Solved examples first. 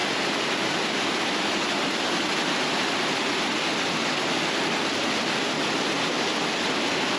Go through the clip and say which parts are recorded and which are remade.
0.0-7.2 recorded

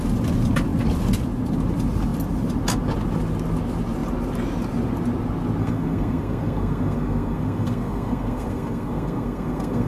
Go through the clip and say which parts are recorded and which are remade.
0.0-5.6 recorded; 5.6-9.9 remade